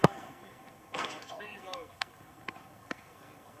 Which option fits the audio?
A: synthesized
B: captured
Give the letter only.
A